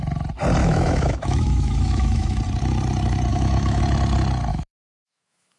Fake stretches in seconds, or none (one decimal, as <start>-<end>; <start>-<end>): 0.6-2.4; 3.3-3.8; 4.5-5.6